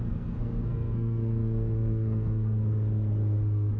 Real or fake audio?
fake